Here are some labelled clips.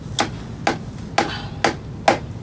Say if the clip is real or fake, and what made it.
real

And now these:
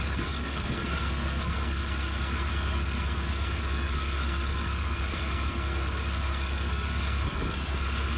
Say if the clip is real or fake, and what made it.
fake, codec, SNAC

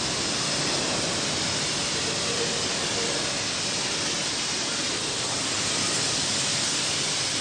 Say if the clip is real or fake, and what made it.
real